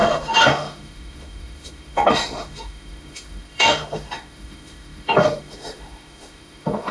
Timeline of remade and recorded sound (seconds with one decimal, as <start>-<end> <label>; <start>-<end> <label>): 0.0-6.9 remade